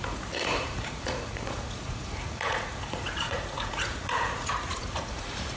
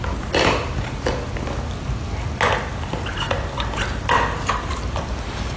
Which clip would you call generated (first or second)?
first